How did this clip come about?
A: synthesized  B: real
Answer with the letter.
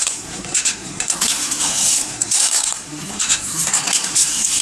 A